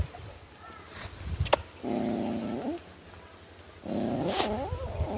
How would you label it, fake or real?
real